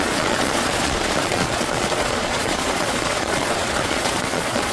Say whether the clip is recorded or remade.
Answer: remade